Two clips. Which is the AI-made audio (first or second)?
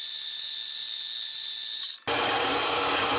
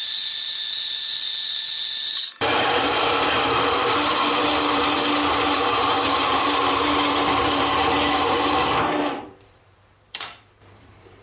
second